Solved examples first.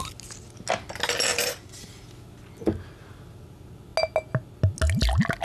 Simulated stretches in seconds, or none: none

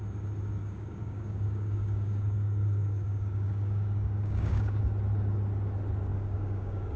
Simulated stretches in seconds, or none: 0.6-4.8; 6.1-7.0

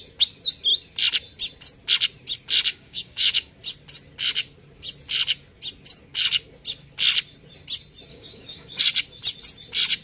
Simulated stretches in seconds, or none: 2.7-3.5; 8.1-8.8

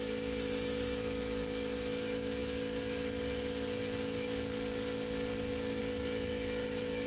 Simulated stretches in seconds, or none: 0.0-7.1